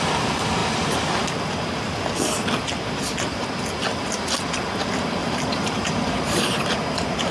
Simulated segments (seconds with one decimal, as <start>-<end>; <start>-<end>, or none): 5.2-7.3